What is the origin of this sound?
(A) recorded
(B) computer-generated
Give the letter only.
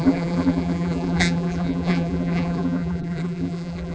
B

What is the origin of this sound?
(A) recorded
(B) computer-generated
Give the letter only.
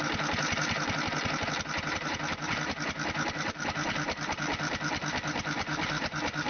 A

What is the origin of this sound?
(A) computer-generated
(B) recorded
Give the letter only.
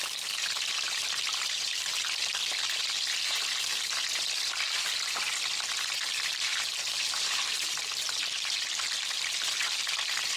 B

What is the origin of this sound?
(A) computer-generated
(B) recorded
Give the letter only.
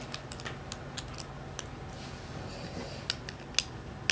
B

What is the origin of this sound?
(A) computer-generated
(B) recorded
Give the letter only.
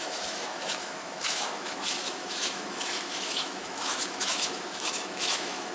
A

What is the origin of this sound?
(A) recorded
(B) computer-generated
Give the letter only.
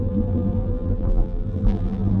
B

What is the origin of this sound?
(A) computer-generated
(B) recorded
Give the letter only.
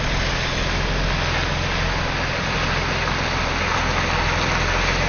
B